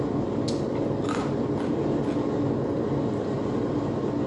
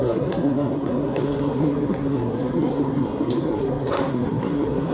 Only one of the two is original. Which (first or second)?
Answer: first